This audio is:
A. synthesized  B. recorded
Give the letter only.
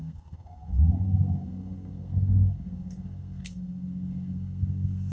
A